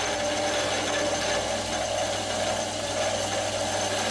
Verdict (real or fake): real